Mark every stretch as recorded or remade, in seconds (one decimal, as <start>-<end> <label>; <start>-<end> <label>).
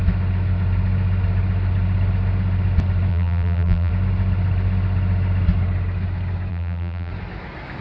0.0-3.1 recorded; 3.1-3.9 remade; 3.9-6.5 recorded; 6.5-7.1 remade; 7.1-7.8 recorded